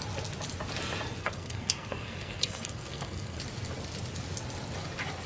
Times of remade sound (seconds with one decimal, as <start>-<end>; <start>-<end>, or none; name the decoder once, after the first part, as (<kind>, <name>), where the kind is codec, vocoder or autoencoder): 1.2-3.4 (codec, SNAC)